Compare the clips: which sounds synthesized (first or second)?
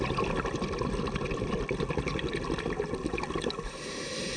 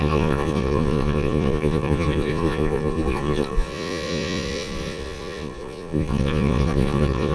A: second